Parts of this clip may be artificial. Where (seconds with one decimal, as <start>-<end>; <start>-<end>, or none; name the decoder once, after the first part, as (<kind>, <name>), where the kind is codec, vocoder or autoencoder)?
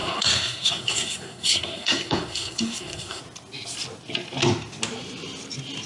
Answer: 0.0-3.2 (codec, SNAC)